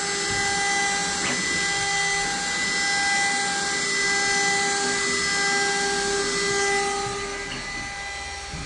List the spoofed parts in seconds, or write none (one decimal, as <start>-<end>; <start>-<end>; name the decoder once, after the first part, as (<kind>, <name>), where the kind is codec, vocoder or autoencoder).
none